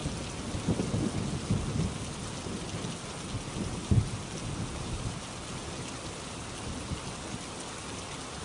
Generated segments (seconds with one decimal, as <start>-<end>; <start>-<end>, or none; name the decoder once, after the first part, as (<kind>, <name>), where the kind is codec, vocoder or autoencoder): none